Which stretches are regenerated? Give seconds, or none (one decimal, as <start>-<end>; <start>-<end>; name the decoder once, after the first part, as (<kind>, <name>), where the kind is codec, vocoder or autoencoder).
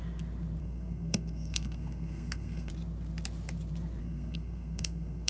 0.6-2.7 (codec, SNAC); 4.0-5.3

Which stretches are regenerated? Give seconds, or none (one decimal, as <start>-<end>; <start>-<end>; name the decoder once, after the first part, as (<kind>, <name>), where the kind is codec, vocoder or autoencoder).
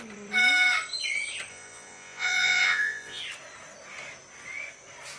1.5-3.2 (vocoder, Vocos)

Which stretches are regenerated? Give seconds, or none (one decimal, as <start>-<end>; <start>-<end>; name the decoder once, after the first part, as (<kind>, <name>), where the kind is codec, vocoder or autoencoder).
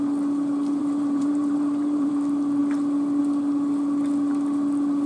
0.8-2.1 (vocoder, BigVGAN v2)